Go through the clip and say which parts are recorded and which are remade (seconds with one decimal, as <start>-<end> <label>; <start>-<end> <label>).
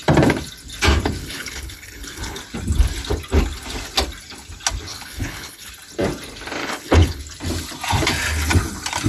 0.0-1.2 recorded; 1.2-2.4 remade; 2.4-4.9 recorded; 4.9-5.7 remade; 5.7-6.6 recorded; 6.6-7.2 remade; 7.2-9.1 recorded